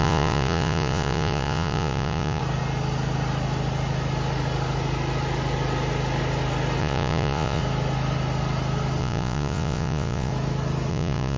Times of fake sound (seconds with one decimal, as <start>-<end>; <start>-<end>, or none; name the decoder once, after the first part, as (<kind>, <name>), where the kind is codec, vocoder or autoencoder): 0.0-2.4 (vocoder, Vocos); 6.8-7.6; 9.0-10.3; 10.9-11.4